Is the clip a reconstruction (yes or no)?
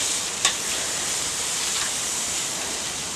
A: yes